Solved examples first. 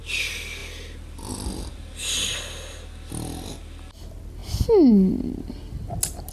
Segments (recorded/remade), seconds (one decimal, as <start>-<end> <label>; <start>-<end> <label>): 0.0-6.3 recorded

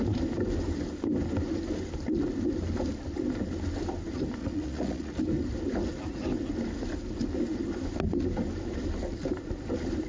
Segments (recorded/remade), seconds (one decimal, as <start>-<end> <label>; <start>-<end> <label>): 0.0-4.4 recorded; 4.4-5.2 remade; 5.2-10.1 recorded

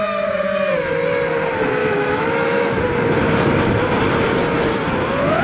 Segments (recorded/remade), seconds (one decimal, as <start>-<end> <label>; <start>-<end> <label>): 0.0-1.8 recorded; 1.8-2.8 remade; 2.8-5.4 recorded

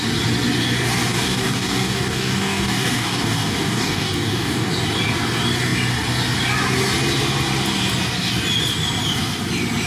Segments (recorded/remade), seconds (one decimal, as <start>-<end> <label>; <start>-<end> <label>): 0.0-1.1 recorded; 1.1-4.7 remade; 4.7-9.9 recorded